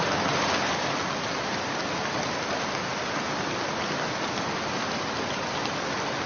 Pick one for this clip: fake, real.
real